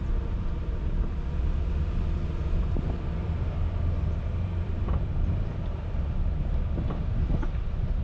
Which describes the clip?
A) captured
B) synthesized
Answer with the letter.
B